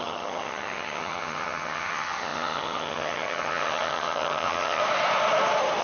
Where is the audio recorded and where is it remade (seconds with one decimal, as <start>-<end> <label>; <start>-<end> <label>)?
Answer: 0.0-4.8 remade; 4.8-5.8 recorded